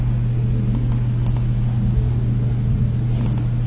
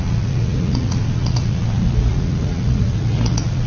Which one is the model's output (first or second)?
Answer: second